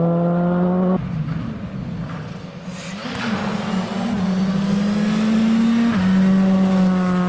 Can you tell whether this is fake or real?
real